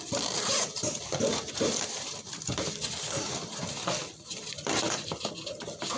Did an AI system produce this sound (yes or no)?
yes